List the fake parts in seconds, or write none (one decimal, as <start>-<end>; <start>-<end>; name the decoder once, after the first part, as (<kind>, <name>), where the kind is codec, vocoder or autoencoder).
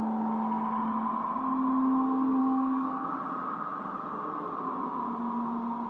2.4-3.1 (codec, DAC)